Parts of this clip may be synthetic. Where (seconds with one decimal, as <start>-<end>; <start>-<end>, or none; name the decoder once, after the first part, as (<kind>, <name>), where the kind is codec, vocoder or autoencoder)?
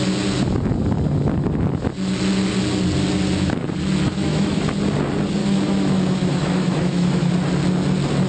4.1-4.6 (autoencoder, DAC-VAE); 5.4-7.3